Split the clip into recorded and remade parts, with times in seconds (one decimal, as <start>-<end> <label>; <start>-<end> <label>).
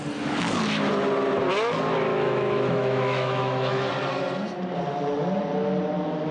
0.0-2.1 recorded; 2.1-3.9 remade; 3.9-6.3 recorded